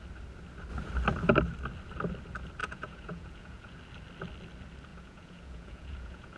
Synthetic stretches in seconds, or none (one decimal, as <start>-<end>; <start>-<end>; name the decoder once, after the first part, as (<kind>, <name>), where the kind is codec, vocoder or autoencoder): 2.6-3.8 (vocoder, Vocos); 4.9-6.4